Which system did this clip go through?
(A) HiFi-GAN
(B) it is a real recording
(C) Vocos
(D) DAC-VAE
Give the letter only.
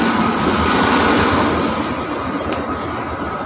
B